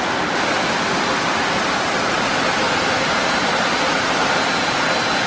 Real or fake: real